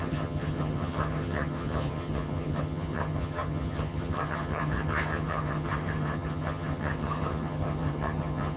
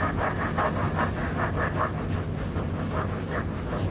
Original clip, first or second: second